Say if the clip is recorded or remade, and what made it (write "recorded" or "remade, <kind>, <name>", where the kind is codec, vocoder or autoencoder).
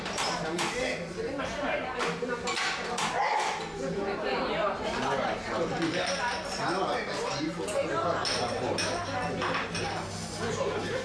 recorded